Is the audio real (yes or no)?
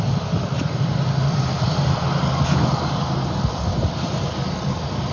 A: no